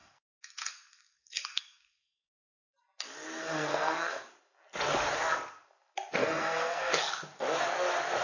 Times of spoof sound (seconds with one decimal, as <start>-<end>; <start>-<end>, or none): 0.0-2.4; 3.4-4.3; 6.2-6.9